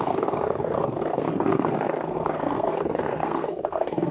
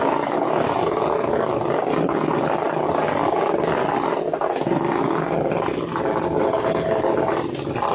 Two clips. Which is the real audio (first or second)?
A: second